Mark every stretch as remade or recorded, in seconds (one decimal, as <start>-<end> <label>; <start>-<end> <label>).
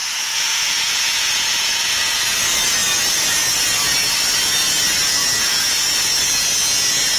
0.0-2.4 remade; 2.4-7.2 recorded